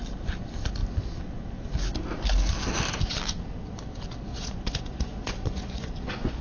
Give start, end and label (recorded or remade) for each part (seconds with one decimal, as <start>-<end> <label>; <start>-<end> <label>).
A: 0.0-4.3 recorded; 4.3-6.4 remade